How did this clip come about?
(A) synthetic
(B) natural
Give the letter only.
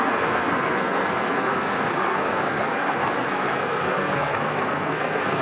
A